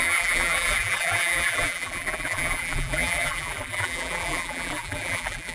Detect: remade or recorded remade